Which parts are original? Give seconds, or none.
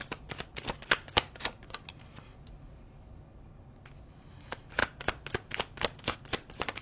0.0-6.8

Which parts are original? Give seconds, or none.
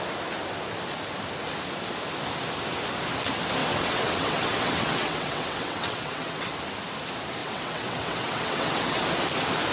0.0-3.6; 6.5-7.4; 9.0-9.7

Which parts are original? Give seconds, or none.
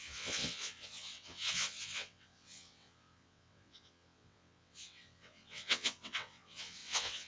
none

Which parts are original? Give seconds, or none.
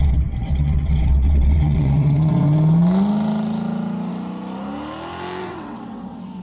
2.3-5.4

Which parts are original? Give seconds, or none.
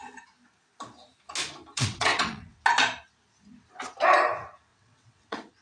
0.0-1.7; 2.6-4.7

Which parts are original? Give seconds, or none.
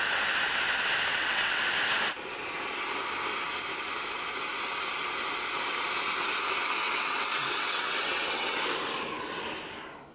0.0-1.1; 1.6-6.8; 8.6-10.1